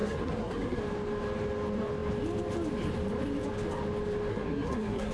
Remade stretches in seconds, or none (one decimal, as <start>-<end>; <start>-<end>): 0.0-0.8; 4.3-5.1